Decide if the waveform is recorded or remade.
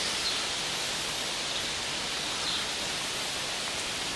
recorded